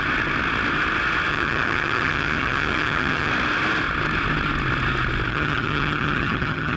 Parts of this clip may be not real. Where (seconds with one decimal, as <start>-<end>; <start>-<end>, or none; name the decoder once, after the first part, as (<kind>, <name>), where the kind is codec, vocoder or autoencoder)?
1.3-3.3 (vocoder, HiFi-GAN); 5.3-6.8